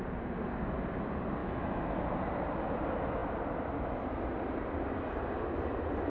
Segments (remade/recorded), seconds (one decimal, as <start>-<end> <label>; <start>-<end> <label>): 0.0-1.4 recorded; 1.4-2.0 remade; 2.0-6.1 recorded